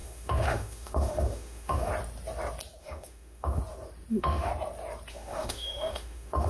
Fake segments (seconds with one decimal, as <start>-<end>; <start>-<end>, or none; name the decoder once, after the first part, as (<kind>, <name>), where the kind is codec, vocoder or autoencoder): 0.0-1.9 (autoencoder, DAC-VAE); 2.8-3.6; 4.1-4.5; 5.1-6.5